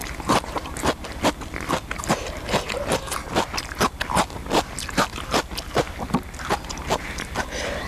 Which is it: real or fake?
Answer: real